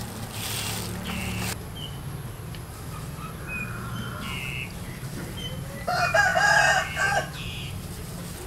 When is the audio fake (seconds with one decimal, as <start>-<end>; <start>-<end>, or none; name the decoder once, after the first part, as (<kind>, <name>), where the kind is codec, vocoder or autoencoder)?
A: none